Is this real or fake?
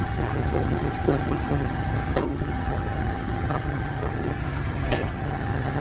fake